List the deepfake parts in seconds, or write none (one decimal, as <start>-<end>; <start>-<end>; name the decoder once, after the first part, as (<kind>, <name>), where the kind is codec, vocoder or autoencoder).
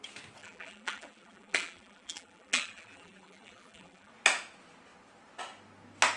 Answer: 0.4-4.1 (vocoder, BigVGAN v2)